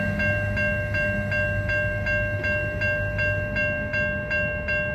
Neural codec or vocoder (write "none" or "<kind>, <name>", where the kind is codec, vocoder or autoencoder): none